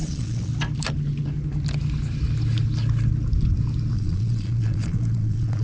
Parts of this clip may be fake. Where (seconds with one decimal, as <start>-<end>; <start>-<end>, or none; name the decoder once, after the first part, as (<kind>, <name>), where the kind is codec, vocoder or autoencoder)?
0.0-0.5 (vocoder, Vocos); 3.9-5.6